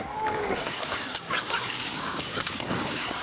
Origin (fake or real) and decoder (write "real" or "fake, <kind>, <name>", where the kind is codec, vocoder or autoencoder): fake, codec, DAC